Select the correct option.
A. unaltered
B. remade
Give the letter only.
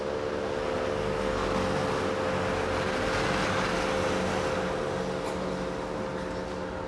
A